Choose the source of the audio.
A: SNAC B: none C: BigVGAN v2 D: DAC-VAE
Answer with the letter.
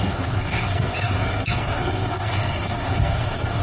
A